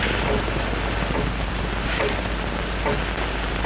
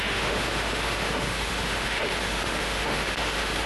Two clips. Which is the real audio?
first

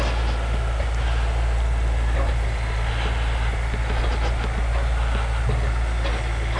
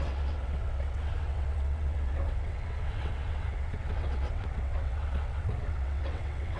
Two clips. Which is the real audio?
first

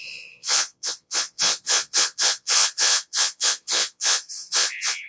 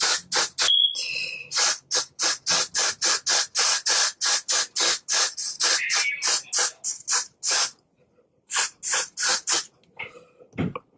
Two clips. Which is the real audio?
second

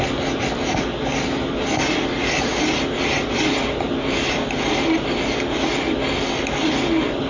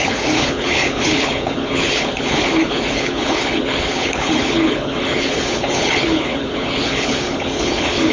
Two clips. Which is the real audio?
first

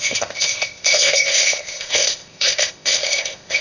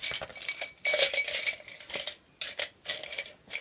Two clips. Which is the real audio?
second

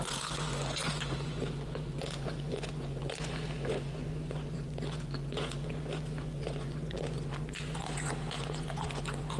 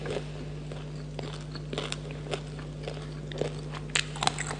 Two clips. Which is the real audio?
second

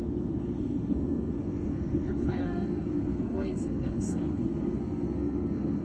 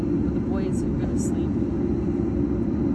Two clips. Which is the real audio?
second